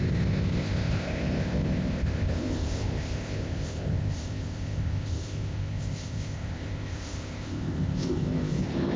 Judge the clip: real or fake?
fake